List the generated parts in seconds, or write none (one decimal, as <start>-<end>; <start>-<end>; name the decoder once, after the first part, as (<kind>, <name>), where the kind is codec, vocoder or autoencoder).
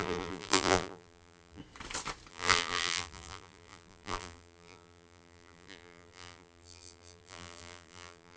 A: 0.0-1.6 (vocoder, BigVGAN v2); 2.3-8.4